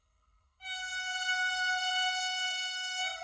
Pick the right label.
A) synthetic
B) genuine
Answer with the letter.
A